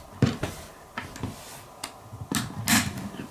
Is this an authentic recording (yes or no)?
yes